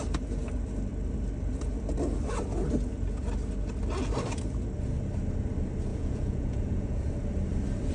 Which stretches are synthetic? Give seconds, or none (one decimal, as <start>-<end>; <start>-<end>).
5.9-7.1